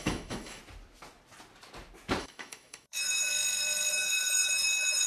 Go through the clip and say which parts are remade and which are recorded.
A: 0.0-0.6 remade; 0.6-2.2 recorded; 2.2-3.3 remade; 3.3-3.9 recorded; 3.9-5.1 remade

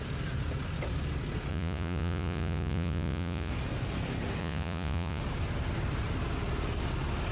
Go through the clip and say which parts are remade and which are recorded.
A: 0.0-1.5 recorded; 1.5-3.5 remade; 3.5-4.4 recorded; 4.4-5.2 remade; 5.2-7.3 recorded

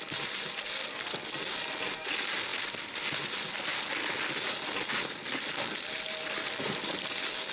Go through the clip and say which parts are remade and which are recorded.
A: 0.0-7.5 recorded

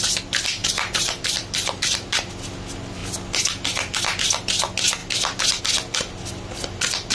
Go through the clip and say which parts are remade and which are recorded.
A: 0.0-0.6 recorded; 0.6-2.3 remade; 2.3-5.0 recorded; 5.0-5.6 remade; 5.6-7.1 recorded